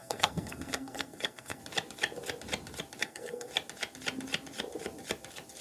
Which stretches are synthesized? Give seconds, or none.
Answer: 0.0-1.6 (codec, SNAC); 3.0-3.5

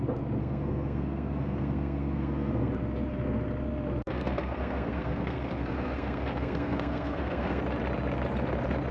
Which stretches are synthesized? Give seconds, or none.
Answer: 0.4-2.7 (codec, SNAC); 4.0-7.6

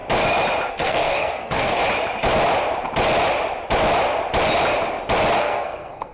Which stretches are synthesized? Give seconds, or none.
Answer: 0.7-1.8 (codec, SNAC); 5.4-6.1

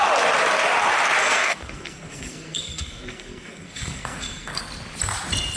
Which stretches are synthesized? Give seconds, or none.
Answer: 1.2-4.6 (codec, SNAC)